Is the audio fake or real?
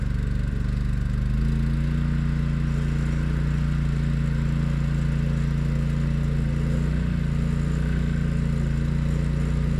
real